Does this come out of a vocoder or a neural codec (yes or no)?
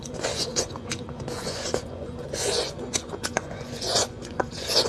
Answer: yes